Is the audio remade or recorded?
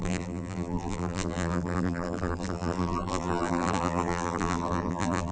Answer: remade